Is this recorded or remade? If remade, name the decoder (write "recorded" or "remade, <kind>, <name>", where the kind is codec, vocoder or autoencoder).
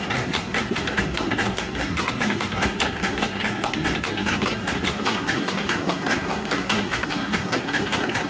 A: remade, codec, SNAC